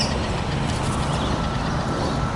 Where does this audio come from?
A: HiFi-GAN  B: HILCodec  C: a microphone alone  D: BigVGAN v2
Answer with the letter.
C